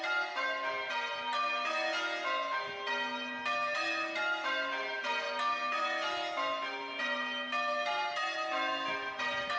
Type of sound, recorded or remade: recorded